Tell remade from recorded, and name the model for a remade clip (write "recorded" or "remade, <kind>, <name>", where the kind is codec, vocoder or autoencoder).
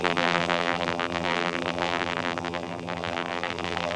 remade, vocoder, BigVGAN v2